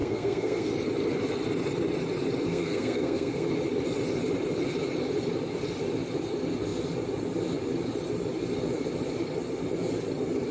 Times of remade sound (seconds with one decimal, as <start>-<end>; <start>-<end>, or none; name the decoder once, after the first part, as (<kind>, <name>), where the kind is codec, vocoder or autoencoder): 0.0-0.7 (codec, SNAC); 2.5-3.5

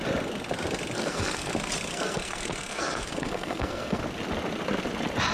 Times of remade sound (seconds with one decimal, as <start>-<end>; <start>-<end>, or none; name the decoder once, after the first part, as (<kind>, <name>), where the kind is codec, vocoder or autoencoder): 1.0-1.5 (codec, SNAC); 1.9-4.0